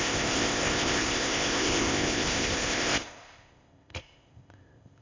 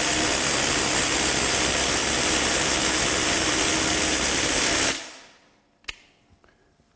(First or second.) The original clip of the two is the second